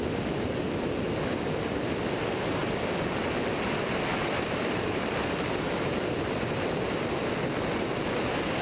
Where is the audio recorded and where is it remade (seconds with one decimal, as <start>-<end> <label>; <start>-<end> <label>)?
0.0-2.6 recorded; 2.6-3.2 remade; 3.2-4.1 recorded; 4.1-7.9 remade; 7.9-8.6 recorded